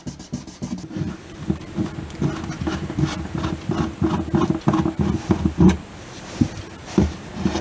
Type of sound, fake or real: real